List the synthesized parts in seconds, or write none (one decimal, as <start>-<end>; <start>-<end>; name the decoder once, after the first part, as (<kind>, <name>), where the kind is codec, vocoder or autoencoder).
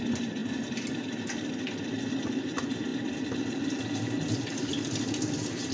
none